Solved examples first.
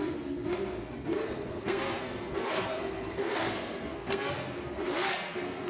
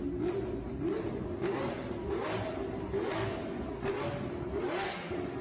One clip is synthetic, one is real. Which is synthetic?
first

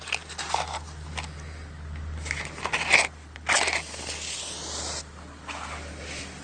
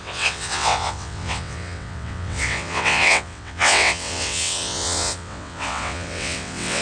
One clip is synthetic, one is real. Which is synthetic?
second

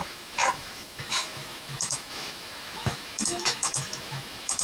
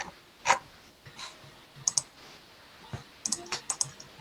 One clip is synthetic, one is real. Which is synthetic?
first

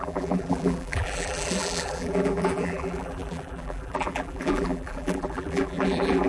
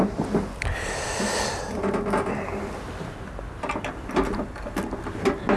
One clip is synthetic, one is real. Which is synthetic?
first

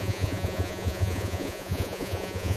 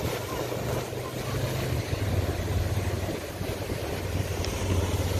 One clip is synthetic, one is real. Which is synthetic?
first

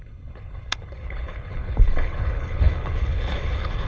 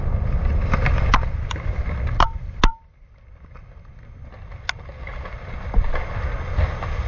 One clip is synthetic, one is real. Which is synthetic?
first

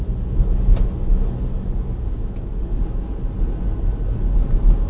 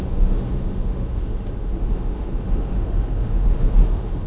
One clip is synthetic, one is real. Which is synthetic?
second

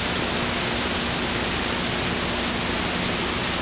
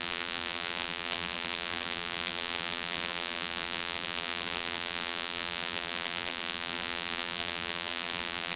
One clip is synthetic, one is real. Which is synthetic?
second